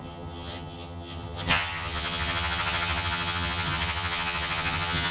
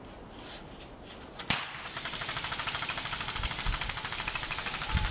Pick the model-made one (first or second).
first